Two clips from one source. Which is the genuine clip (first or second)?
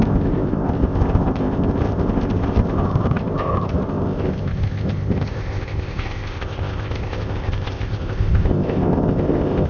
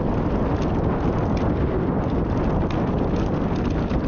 second